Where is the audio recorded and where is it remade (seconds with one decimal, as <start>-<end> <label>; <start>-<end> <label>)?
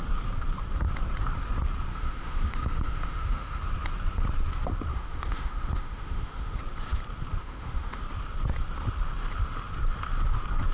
0.0-1.9 recorded; 1.9-3.6 remade; 3.6-4.9 recorded; 4.9-6.6 remade; 6.6-7.4 recorded; 7.4-8.0 remade; 8.0-10.7 recorded